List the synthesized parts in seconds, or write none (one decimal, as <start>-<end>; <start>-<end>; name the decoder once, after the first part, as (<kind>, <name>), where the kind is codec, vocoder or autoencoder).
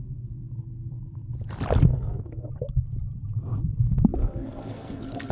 1.9-2.5 (codec, SNAC); 4.2-5.3